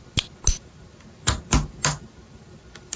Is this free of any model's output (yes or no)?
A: yes